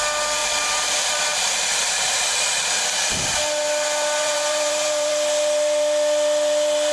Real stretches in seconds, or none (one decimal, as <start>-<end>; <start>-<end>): 0.0-0.4; 2.5-4.2; 5.1-6.9